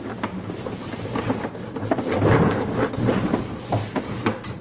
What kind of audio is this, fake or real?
fake